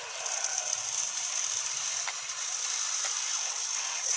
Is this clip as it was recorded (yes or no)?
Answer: no